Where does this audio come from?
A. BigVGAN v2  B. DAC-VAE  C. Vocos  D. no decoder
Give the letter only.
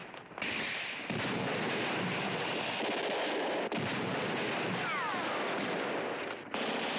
D